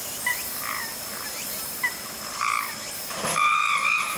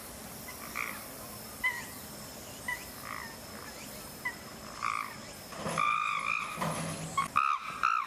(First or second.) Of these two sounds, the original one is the second